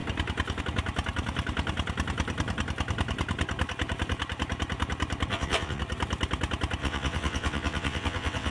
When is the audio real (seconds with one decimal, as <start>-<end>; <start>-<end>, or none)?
0.0-5.3; 5.8-6.8

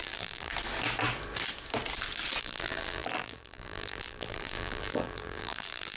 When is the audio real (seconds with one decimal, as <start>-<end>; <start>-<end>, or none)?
0.5-2.4

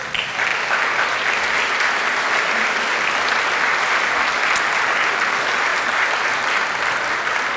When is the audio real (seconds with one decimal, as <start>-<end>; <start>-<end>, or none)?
0.0-7.6

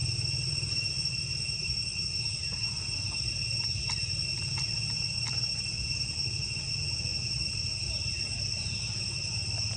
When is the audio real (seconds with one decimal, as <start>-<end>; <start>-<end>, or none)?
0.0-9.8

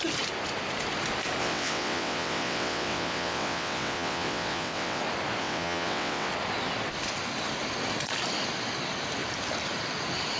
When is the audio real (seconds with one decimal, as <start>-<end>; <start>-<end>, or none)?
0.0-1.4; 5.0-5.4; 6.3-10.4

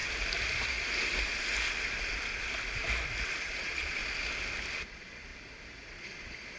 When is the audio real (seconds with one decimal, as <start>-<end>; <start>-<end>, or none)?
0.0-3.4; 4.0-4.7; 5.3-5.9